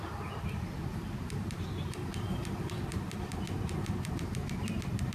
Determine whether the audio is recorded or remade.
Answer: recorded